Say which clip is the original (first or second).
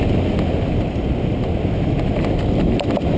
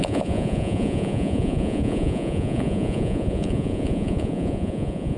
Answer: first